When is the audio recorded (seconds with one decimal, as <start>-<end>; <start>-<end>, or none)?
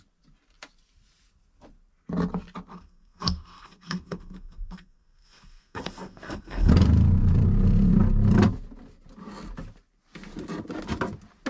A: 0.0-2.7; 6.7-11.5